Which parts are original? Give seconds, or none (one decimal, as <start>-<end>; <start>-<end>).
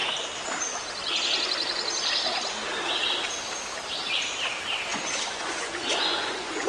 0.0-4.9